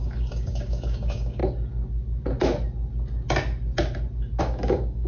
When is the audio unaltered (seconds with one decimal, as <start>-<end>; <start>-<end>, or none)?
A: 1.4-4.4